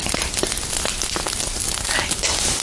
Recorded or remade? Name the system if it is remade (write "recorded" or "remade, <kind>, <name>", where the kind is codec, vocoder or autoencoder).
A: recorded